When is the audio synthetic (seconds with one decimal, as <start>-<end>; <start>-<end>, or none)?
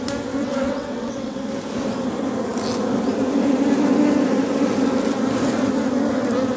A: 0.4-1.4